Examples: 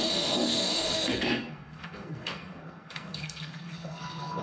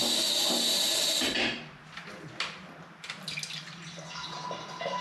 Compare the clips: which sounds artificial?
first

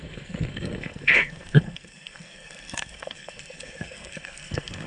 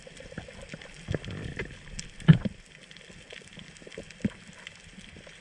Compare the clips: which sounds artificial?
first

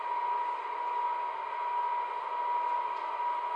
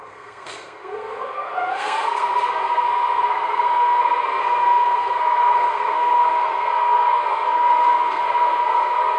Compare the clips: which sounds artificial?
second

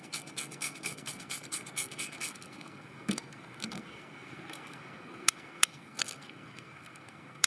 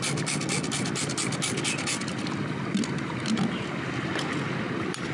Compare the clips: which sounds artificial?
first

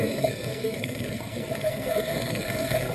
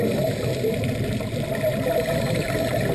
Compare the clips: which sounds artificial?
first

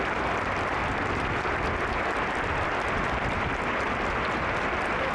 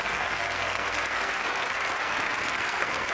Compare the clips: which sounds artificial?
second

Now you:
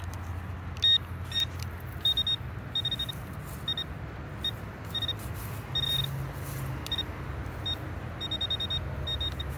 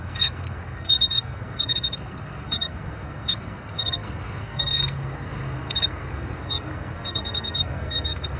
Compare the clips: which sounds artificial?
second